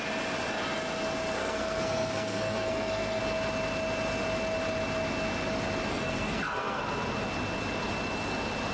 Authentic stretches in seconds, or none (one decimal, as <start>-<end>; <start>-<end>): 0.0-1.4; 3.2-5.9; 6.8-8.7